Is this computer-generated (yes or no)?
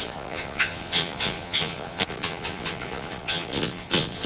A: yes